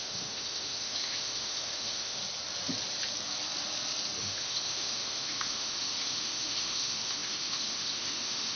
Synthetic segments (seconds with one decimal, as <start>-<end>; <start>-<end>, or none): 0.0-2.2; 4.2-8.6